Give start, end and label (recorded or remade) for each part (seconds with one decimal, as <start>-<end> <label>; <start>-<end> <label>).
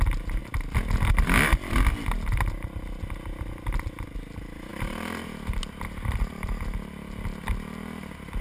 0.0-4.7 recorded; 4.7-5.6 remade; 5.6-8.4 recorded